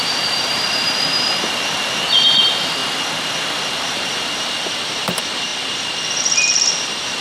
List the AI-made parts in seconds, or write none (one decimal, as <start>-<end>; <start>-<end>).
0.0-2.8; 3.7-5.5; 6.2-7.2